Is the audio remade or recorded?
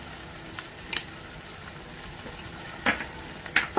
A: recorded